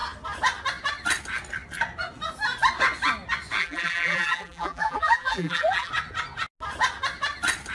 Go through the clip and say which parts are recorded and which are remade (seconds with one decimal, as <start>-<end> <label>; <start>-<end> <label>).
0.0-3.6 recorded; 3.6-5.9 remade; 5.9-7.7 recorded